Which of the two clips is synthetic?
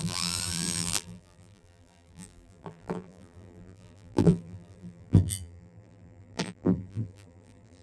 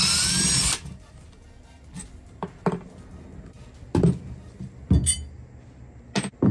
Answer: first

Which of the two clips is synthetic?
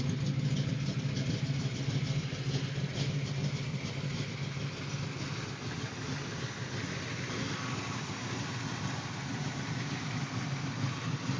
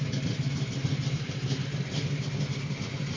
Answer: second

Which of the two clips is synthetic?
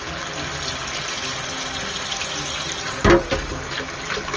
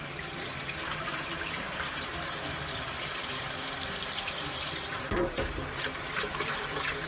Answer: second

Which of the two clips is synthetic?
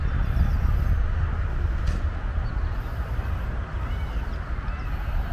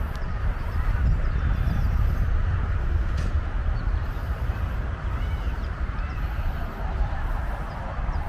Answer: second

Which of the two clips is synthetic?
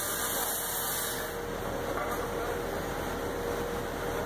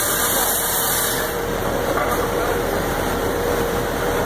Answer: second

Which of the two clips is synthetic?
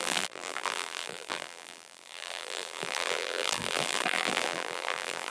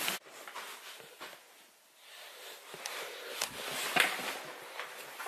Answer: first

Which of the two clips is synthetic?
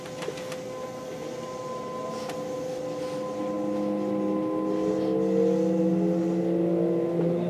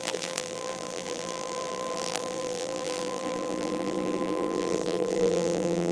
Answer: second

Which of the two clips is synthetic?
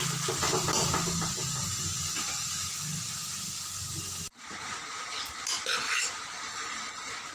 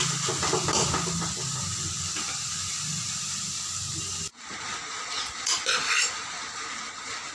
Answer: second